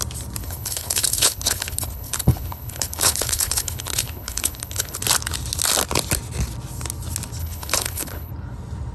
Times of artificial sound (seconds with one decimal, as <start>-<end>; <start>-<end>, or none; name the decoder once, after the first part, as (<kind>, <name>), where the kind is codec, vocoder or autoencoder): 0.4-5.0 (codec, HILCodec); 7.4-8.3